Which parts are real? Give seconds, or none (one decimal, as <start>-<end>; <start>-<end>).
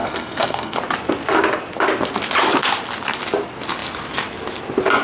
0.8-5.0